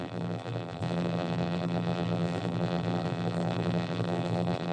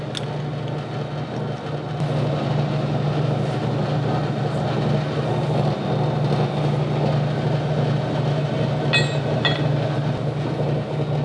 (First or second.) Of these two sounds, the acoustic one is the second